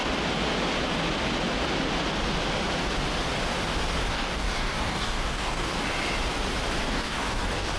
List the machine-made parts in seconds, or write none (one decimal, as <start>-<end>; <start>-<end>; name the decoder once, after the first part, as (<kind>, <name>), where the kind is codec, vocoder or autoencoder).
4.1-5.7 (codec, DAC); 6.8-7.8